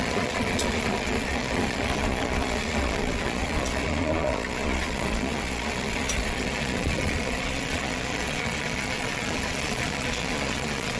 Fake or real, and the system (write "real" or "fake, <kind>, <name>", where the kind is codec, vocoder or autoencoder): fake, vocoder, Vocos